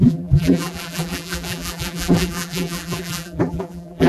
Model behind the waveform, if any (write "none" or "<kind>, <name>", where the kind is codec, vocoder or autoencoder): vocoder, BigVGAN v2